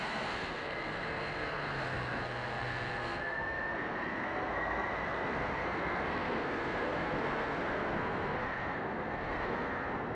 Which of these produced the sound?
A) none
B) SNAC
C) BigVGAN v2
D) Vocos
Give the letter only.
B